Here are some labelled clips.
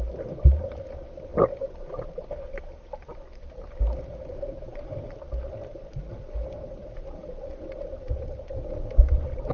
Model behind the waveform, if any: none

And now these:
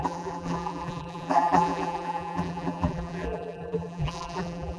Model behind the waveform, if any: vocoder, BigVGAN v2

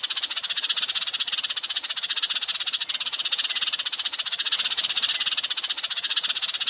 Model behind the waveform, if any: none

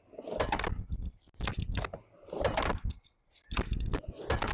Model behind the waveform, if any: none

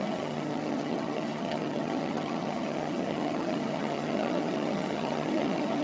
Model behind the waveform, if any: vocoder, HiFi-GAN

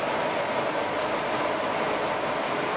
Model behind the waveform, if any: none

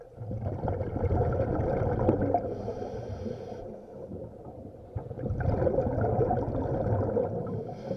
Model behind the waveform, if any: none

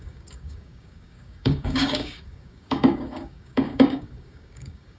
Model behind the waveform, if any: codec, DAC